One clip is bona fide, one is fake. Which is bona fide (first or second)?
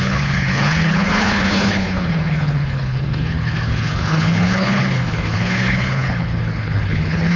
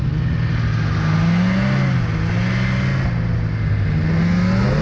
second